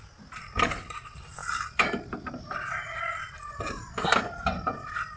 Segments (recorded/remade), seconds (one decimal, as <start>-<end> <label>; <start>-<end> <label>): 0.0-5.2 recorded